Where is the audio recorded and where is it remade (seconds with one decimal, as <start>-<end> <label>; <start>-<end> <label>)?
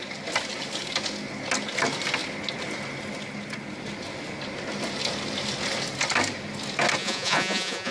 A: 0.0-7.0 recorded; 7.0-7.9 remade